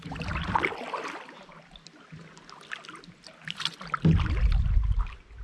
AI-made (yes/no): no